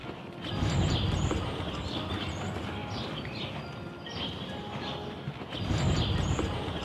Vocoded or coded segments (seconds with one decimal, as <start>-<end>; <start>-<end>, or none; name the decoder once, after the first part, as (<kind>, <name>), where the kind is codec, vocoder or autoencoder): none